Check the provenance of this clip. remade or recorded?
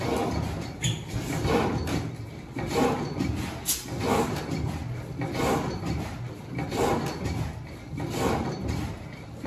recorded